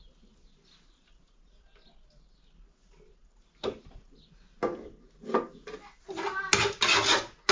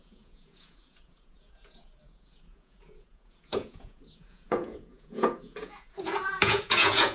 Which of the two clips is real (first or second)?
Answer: first